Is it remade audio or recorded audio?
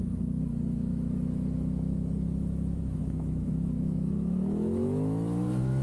remade